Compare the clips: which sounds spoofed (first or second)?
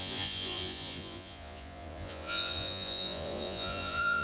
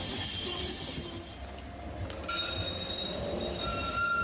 first